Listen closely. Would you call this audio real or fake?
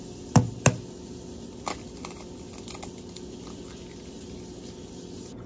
real